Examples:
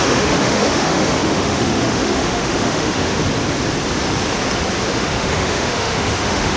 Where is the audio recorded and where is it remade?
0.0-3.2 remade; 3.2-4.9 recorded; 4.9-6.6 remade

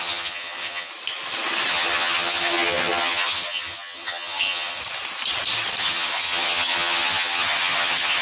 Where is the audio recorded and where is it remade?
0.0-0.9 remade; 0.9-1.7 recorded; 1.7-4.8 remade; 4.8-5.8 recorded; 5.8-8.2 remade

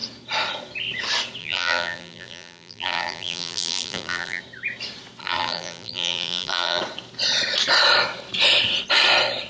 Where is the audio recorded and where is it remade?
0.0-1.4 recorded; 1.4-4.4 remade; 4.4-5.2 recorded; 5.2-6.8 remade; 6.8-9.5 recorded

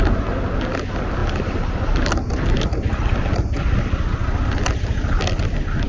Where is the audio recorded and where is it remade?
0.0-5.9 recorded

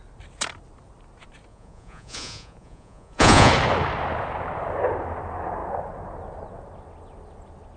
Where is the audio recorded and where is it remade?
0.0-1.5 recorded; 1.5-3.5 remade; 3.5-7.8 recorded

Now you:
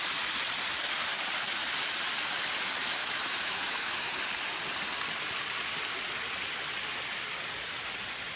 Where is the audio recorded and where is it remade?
0.0-3.0 recorded; 3.0-4.1 remade; 4.1-8.4 recorded

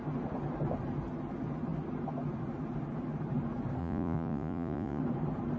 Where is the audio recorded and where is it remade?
0.0-3.8 recorded; 3.8-5.0 remade; 5.0-5.6 recorded

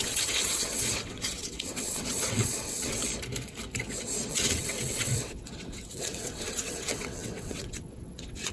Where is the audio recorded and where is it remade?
0.0-3.0 remade; 3.0-4.3 recorded; 4.3-8.5 remade